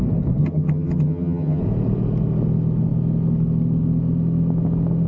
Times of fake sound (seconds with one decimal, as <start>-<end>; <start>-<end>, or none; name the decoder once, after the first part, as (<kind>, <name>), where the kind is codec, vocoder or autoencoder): 0.4-1.6 (vocoder, HiFi-GAN)